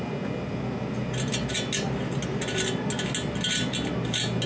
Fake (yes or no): no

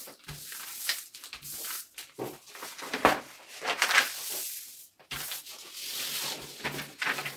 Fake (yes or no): no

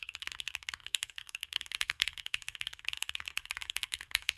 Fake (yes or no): yes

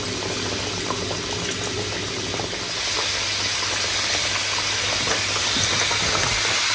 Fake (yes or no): no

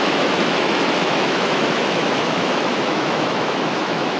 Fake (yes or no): yes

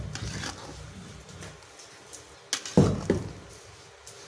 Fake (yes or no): no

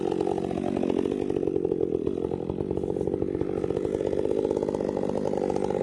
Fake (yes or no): yes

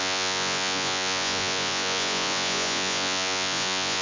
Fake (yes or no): yes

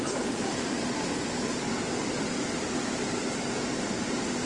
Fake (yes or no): no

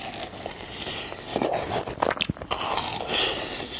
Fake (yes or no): no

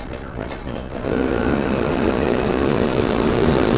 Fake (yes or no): yes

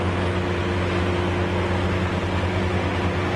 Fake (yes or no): no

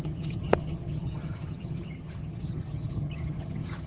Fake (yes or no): yes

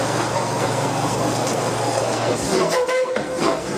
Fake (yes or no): yes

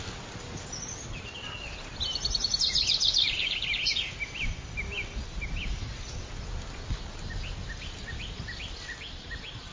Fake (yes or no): no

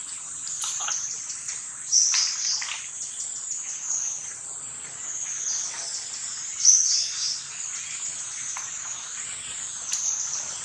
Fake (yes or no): no